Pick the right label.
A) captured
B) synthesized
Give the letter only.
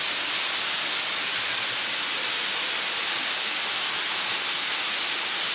A